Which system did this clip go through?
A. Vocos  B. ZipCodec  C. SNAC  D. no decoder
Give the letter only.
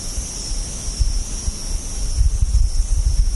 D